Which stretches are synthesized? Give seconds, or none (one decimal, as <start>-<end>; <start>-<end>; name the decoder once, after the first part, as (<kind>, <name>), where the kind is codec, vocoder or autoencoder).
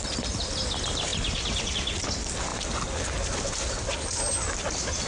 none